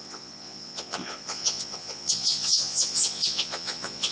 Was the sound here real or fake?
fake